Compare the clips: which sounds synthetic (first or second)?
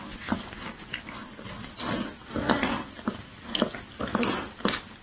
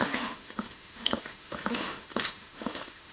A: second